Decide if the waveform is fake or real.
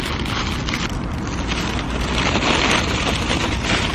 real